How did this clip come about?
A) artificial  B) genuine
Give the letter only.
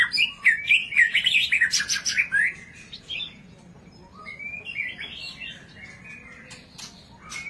B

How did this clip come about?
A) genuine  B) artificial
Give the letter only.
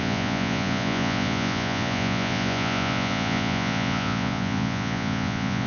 B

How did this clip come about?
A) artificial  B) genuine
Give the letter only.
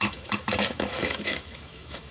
A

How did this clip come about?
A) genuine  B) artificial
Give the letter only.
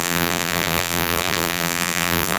B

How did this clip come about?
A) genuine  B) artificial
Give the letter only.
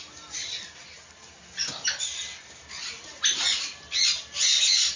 A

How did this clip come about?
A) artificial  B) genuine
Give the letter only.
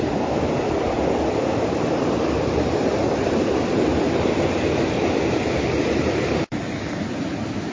A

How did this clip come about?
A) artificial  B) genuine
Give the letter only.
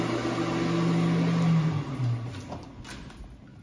B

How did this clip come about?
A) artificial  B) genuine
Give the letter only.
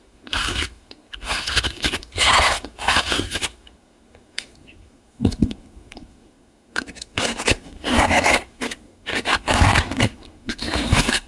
A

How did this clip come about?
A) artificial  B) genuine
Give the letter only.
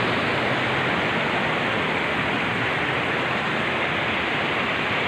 B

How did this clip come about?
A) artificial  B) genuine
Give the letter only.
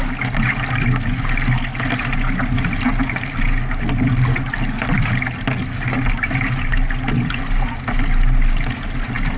B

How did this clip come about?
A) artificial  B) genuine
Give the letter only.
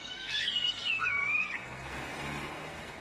A